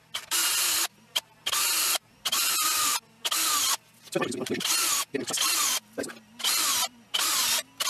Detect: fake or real real